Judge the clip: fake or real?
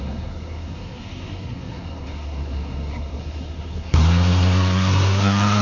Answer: fake